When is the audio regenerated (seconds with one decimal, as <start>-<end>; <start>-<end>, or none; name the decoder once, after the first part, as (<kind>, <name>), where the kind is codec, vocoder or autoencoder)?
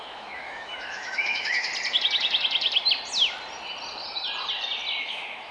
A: 0.0-1.7 (autoencoder, DAC-VAE); 5.0-5.5